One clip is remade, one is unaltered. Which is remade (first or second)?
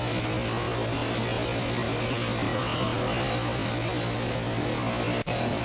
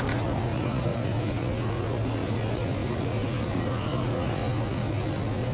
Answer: second